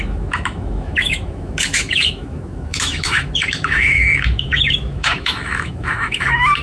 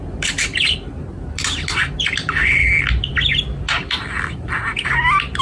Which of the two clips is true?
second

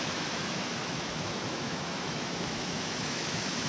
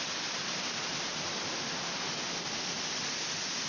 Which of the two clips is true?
second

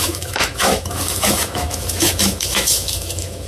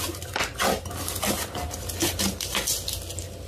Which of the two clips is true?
second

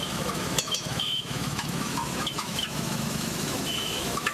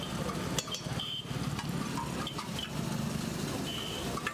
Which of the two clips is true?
second